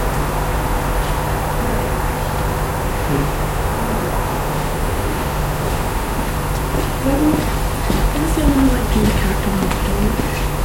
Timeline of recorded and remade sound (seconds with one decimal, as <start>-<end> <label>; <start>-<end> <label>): 0.0-2.9 recorded; 2.9-3.7 remade; 3.7-4.3 recorded; 4.3-6.3 remade; 6.3-10.6 recorded